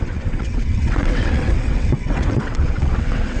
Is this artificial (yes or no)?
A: yes